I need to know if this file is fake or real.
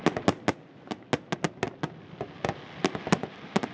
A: real